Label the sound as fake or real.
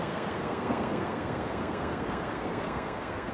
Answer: fake